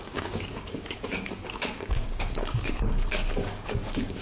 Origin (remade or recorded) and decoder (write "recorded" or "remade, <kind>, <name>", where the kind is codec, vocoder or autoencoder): remade, codec, DAC